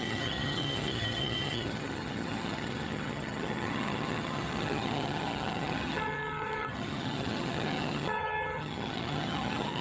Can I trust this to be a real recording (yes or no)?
no